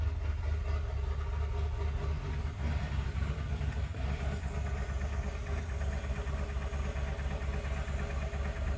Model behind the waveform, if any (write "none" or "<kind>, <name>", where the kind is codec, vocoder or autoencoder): none